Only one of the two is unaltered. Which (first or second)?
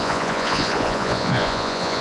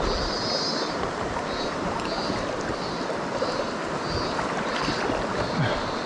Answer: second